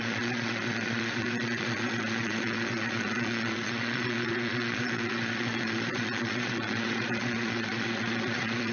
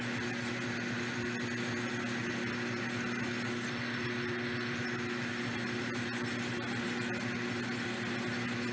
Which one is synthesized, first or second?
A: first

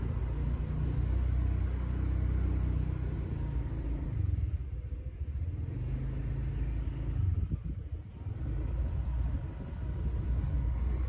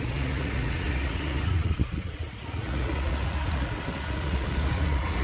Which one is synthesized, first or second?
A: second